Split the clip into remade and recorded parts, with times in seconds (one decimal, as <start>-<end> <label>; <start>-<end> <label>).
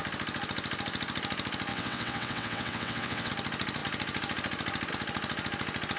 0.0-1.7 recorded; 1.7-3.3 remade; 3.3-6.0 recorded